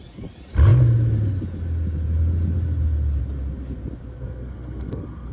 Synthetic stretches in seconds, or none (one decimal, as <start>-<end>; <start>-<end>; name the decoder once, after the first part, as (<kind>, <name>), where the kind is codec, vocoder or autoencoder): 4.2-5.3 (codec, SNAC)